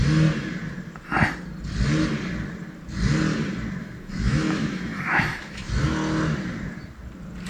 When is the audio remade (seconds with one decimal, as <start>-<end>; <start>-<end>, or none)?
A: 3.8-5.7